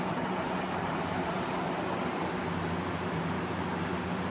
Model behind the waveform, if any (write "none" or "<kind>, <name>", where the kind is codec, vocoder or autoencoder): none